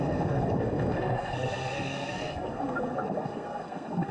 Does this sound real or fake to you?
fake